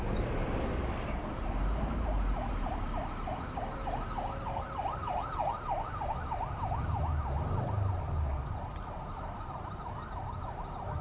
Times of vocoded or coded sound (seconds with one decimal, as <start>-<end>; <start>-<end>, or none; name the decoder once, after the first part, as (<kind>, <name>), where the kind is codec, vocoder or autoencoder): none